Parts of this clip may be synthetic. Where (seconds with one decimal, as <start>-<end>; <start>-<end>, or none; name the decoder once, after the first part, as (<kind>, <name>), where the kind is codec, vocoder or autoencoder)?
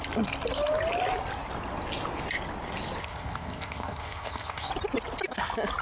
3.0-4.7 (codec, ZipCodec)